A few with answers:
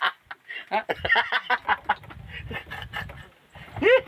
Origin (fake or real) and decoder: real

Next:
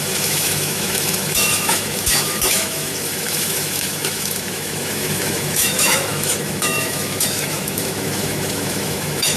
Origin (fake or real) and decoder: fake, autoencoder, DAC-VAE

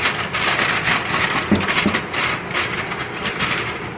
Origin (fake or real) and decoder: real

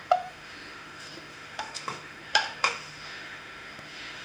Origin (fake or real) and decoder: fake, autoencoder, DAC-VAE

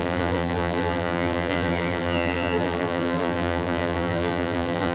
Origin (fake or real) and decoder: fake, vocoder, BigVGAN v2